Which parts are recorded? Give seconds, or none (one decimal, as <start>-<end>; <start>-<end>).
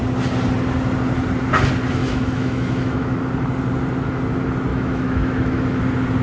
0.0-2.0; 3.2-4.7; 5.8-6.2